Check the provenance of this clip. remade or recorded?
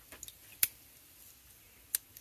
recorded